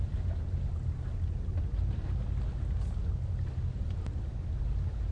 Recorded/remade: recorded